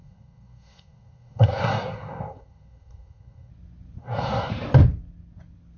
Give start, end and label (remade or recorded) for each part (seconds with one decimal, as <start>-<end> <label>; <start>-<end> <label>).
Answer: 0.0-3.5 remade; 3.5-4.0 recorded; 4.0-4.5 remade; 4.5-5.8 recorded